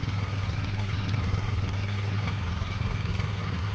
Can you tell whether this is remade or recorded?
remade